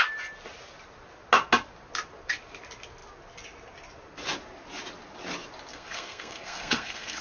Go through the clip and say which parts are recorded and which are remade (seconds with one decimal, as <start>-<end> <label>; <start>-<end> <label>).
0.0-5.7 recorded; 5.7-7.2 remade